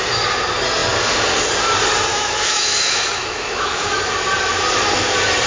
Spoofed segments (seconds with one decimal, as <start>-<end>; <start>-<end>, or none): 2.1-4.0